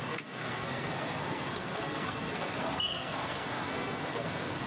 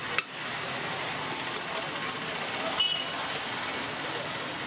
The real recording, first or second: second